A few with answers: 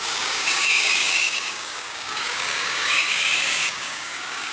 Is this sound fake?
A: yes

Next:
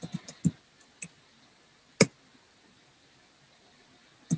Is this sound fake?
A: no